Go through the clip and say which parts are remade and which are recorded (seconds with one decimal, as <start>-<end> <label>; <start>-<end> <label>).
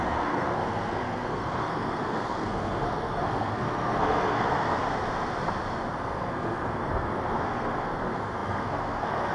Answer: 0.0-4.8 remade; 4.8-5.9 recorded; 5.9-9.3 remade